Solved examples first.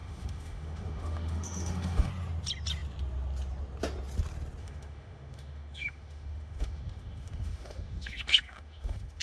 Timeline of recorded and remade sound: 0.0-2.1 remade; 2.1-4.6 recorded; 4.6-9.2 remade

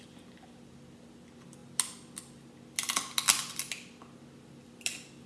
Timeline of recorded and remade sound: 0.0-5.3 recorded

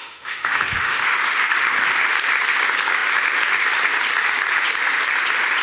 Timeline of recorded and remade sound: 0.0-1.5 remade; 1.5-5.6 recorded

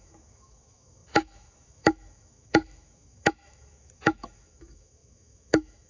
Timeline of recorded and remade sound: 0.0-5.9 remade